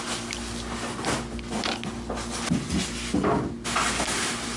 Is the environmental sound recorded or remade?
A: recorded